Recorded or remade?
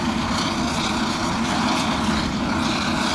recorded